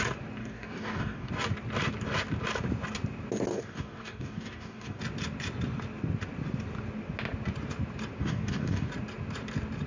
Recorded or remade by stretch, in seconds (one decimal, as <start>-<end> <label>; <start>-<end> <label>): 0.0-0.4 recorded; 0.4-1.3 remade; 1.3-3.5 recorded; 3.5-5.0 remade; 5.0-8.2 recorded; 8.2-8.9 remade; 8.9-9.9 recorded